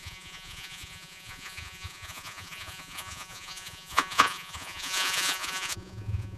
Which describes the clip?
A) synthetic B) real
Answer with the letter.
A